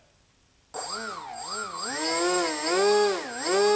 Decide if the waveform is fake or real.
real